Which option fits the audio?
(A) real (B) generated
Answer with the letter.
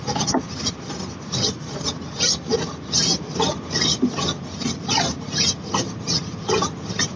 A